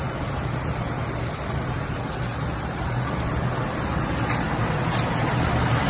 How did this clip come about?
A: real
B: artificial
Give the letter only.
B